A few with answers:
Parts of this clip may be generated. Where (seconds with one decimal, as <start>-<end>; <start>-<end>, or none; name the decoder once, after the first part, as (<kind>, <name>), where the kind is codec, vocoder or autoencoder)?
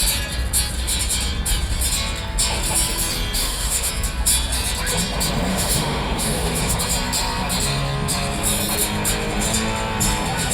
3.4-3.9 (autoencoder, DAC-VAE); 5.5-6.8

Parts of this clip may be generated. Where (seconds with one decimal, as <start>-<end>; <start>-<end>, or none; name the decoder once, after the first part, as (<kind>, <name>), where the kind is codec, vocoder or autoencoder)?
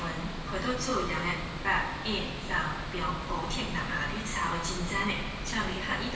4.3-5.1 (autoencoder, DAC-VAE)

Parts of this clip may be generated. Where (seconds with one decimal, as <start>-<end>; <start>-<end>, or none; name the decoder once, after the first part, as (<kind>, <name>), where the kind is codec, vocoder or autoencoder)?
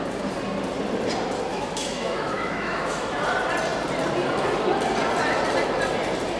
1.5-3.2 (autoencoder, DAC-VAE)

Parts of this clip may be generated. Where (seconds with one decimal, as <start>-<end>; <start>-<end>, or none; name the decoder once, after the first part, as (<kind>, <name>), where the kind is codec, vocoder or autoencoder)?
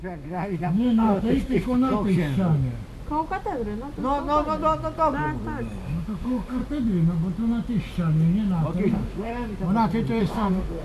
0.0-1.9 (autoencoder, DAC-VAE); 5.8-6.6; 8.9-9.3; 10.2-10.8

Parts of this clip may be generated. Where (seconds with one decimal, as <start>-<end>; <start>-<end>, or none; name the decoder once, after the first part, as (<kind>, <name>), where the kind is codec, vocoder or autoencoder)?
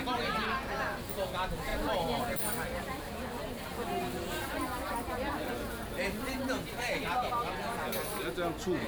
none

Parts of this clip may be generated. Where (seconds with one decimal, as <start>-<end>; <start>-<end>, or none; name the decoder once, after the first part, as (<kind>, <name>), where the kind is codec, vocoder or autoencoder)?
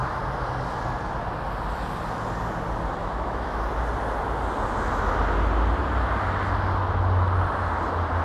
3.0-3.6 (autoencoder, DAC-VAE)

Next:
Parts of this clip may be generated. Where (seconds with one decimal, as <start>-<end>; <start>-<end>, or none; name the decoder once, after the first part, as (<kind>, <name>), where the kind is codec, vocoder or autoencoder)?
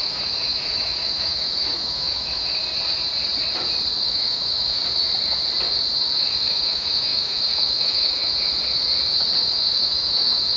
0.0-2.6 (autoencoder, DAC-VAE); 4.0-4.8; 6.0-8.2; 9.5-10.6